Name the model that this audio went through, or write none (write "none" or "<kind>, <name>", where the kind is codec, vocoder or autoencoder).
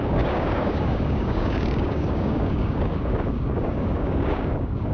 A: codec, DAC